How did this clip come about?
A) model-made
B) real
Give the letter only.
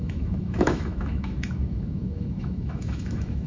A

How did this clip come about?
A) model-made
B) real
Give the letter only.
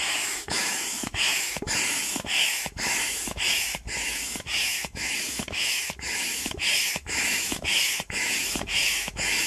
A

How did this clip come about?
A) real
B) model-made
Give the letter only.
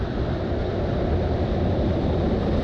A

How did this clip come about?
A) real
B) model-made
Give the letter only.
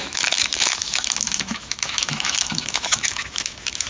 B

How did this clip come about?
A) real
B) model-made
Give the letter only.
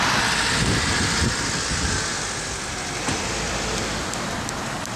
A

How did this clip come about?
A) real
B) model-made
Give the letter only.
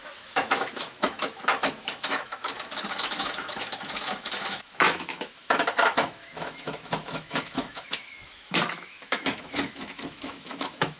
B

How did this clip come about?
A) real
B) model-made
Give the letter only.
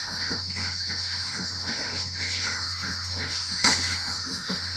B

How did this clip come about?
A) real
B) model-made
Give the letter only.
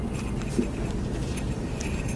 A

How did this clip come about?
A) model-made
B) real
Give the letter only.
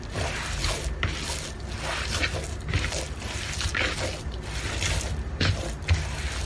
B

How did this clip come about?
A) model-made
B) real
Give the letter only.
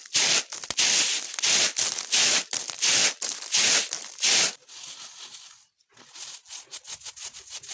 B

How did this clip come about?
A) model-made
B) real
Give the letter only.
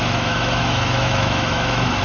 A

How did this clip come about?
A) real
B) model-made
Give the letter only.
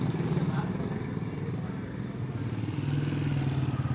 A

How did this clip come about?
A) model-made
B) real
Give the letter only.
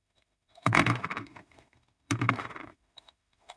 A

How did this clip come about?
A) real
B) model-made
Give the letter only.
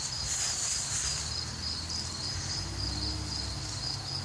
A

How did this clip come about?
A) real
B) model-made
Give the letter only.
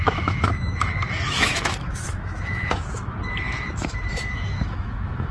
B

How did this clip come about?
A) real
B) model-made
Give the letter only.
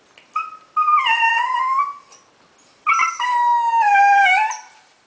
A